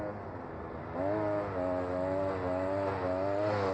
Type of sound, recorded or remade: recorded